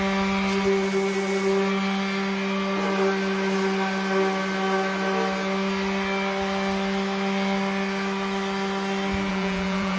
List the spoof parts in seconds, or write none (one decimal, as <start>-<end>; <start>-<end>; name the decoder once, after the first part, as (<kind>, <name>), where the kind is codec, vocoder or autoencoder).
9.3-10.0 (vocoder, Vocos)